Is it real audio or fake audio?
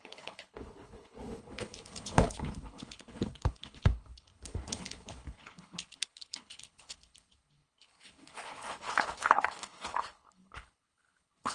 fake